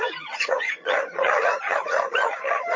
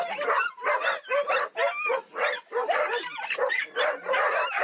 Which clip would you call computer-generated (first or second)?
first